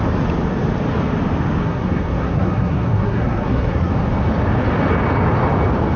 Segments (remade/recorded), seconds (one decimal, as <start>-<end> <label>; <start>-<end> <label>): 0.0-1.6 recorded; 1.6-3.9 remade; 3.9-6.0 recorded